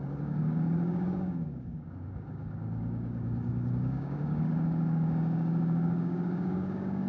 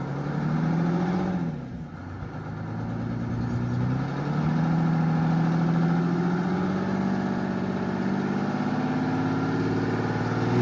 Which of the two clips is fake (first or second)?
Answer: first